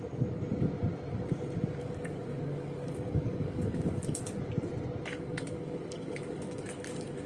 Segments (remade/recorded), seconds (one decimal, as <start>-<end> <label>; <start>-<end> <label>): 0.0-1.8 recorded; 1.8-4.4 remade; 4.4-5.1 recorded; 5.1-7.3 remade